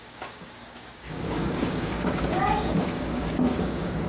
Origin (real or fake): fake